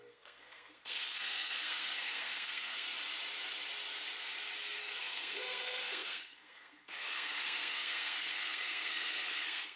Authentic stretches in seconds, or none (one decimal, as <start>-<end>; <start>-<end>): 2.9-4.8